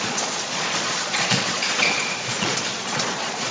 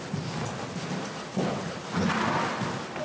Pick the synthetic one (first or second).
first